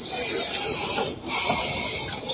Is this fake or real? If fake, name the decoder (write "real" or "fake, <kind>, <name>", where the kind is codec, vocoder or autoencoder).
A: real